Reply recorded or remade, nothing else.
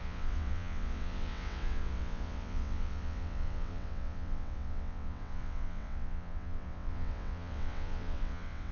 remade